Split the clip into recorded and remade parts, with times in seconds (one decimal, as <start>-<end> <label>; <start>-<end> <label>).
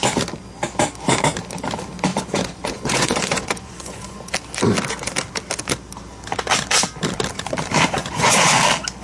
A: 0.0-2.1 recorded; 2.1-4.3 remade; 4.3-8.0 recorded; 8.0-8.6 remade; 8.6-9.0 recorded